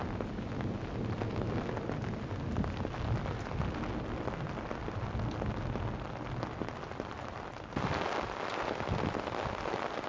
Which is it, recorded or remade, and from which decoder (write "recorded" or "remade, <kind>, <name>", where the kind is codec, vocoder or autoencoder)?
recorded